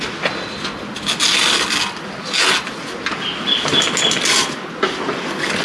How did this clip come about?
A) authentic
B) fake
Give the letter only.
A